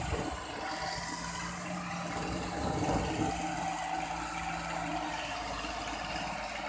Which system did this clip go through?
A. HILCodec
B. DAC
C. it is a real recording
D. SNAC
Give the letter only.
C